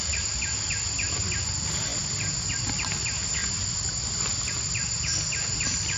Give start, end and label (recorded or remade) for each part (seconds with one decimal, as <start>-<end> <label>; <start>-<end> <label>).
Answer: 0.0-6.0 recorded